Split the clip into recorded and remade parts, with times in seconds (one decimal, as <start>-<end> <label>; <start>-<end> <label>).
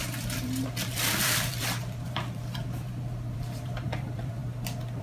0.0-4.4 remade; 4.4-5.0 recorded